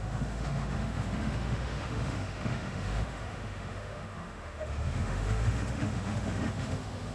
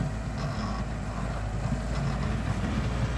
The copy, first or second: first